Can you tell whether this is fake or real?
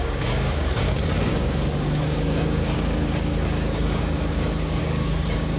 fake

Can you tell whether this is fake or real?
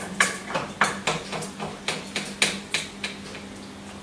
real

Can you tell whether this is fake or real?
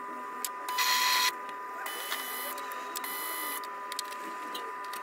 real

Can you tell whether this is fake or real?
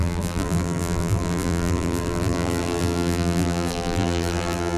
fake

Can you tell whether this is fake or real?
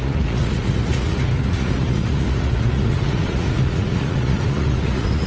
fake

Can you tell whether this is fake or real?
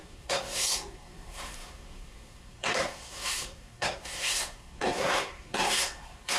fake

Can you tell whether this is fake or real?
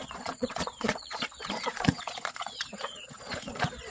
fake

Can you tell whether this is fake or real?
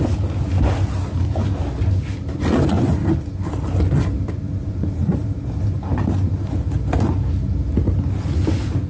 real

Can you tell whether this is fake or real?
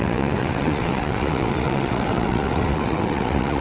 fake